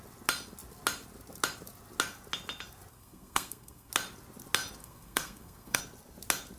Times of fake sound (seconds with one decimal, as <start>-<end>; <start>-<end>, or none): 2.9-3.9; 4.8-5.8

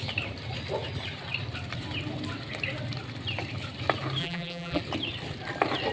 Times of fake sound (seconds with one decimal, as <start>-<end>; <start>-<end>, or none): 4.2-4.8